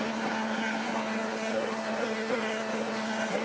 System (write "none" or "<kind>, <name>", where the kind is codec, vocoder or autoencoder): codec, SNAC